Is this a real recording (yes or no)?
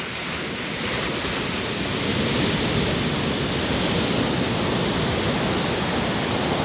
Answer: yes